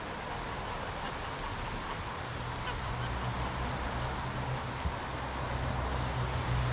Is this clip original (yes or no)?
yes